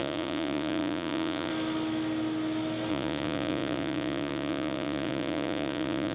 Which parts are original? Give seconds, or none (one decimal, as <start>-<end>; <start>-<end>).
1.5-2.9